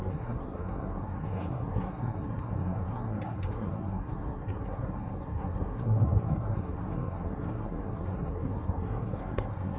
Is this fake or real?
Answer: fake